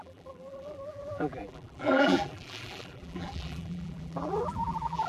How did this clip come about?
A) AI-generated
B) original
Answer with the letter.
A